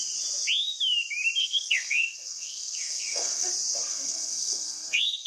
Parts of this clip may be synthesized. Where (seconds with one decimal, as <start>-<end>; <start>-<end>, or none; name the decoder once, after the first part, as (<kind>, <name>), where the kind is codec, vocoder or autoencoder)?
1.4-3.5 (codec, SNAC); 3.9-5.3